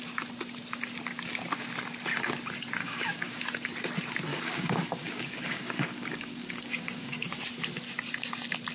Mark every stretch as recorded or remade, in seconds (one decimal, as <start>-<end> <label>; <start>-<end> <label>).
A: 0.0-2.8 recorded; 2.8-3.4 remade; 3.4-4.3 recorded; 4.3-7.4 remade; 7.4-8.7 recorded